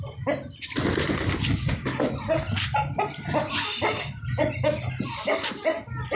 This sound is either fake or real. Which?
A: real